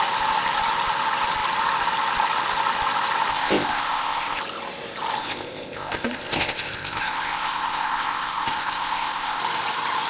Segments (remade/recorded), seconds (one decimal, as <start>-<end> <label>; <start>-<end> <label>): 0.0-3.3 recorded; 3.3-4.4 remade; 4.4-5.2 recorded; 5.2-9.4 remade; 9.4-10.1 recorded